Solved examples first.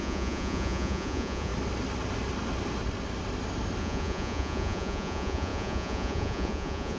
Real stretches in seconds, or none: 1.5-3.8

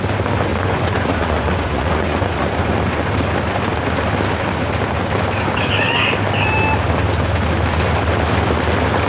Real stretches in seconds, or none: 0.0-0.5; 2.6-9.1

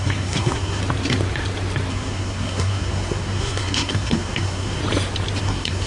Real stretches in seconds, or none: 0.8-1.9; 4.8-5.4